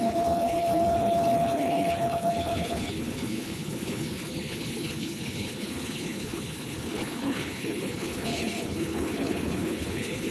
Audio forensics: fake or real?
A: fake